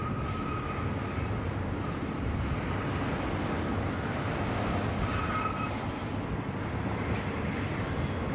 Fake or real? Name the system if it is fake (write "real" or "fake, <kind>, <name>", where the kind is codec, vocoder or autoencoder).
real